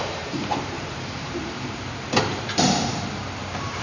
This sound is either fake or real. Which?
fake